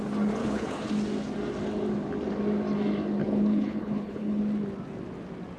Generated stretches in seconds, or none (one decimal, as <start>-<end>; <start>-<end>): 0.4-0.9; 3.2-4.4